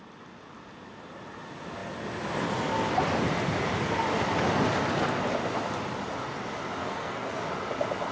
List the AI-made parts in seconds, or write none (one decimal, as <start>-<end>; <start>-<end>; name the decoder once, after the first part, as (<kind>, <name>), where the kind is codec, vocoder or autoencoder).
6.8-7.5 (codec, SNAC)